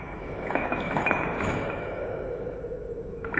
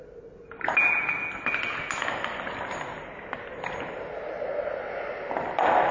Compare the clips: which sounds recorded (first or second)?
second